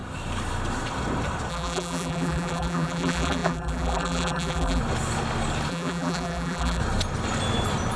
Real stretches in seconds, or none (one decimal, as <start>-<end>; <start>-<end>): 0.0-1.5; 4.8-5.7; 6.8-8.0